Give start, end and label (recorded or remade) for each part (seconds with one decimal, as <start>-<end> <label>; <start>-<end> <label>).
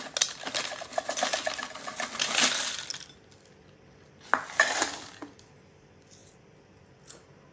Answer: 0.0-7.5 recorded